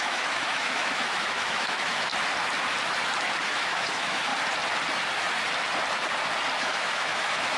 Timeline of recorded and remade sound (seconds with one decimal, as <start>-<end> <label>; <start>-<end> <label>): 0.0-2.1 remade; 2.1-3.4 recorded; 3.4-4.3 remade; 4.3-6.6 recorded; 6.6-7.6 remade